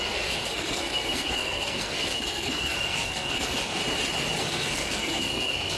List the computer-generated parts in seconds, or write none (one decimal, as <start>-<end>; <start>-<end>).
0.0-3.8; 4.4-5.8